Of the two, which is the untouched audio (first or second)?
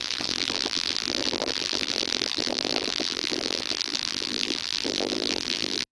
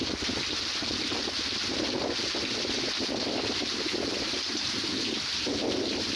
second